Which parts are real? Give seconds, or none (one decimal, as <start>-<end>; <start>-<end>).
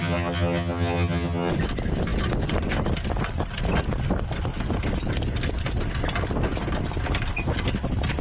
1.5-8.2